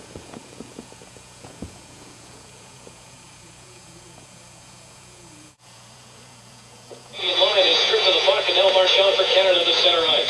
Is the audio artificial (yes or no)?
yes